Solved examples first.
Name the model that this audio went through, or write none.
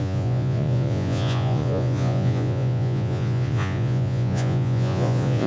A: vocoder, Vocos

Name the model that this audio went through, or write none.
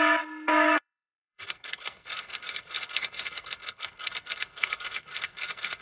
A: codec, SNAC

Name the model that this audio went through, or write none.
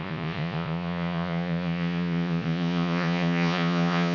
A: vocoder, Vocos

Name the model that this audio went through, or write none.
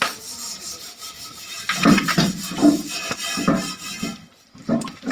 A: vocoder, BigVGAN v2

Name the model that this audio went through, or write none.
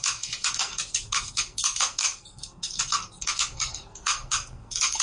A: codec, SNAC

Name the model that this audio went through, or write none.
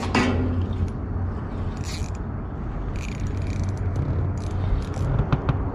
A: none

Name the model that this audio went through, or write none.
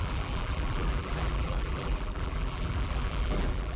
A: vocoder, BigVGAN v2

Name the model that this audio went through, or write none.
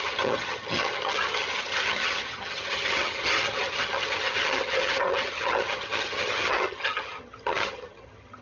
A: vocoder, HiFi-GAN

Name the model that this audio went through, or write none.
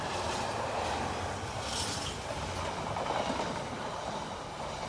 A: none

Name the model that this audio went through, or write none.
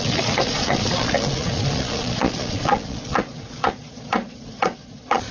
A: vocoder, Vocos